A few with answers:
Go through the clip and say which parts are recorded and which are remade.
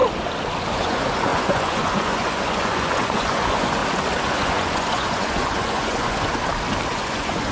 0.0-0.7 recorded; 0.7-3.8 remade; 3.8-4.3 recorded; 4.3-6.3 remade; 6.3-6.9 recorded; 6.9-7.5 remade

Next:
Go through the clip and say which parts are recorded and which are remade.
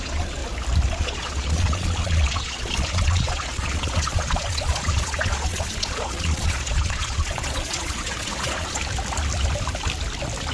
0.0-0.4 remade; 0.4-0.9 recorded; 0.9-8.8 remade; 8.8-10.5 recorded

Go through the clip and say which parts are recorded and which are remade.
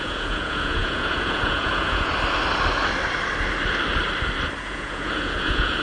0.0-2.1 remade; 2.1-4.6 recorded; 4.6-5.8 remade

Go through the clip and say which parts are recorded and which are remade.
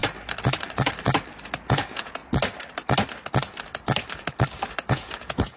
0.0-1.6 recorded; 1.6-2.2 remade; 2.2-4.9 recorded; 4.9-5.6 remade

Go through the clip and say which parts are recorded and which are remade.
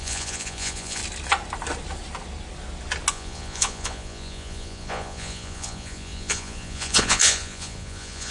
0.0-1.0 remade; 1.0-3.1 recorded; 3.1-8.3 remade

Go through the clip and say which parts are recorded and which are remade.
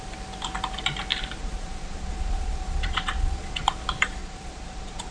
0.0-1.4 recorded; 1.4-3.7 remade; 3.7-4.2 recorded; 4.2-5.1 remade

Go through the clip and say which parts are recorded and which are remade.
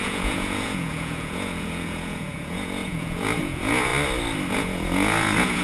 0.0-3.9 remade; 3.9-4.5 recorded; 4.5-5.6 remade